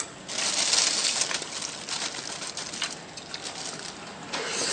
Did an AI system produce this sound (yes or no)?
no